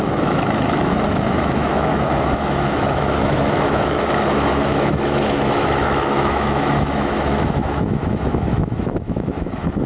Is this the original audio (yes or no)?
no